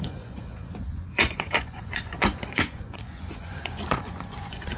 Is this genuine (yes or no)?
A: no